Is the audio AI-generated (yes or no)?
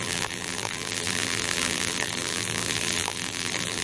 yes